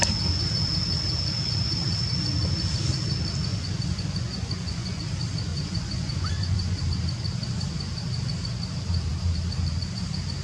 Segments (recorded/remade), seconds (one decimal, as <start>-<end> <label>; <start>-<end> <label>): 0.0-3.5 recorded; 3.5-5.0 remade; 5.0-5.5 recorded; 5.5-6.8 remade; 6.8-10.4 recorded